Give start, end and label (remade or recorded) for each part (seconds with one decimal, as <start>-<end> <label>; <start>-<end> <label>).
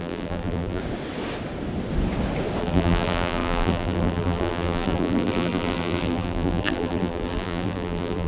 0.0-0.8 remade; 0.8-2.6 recorded; 2.6-8.3 remade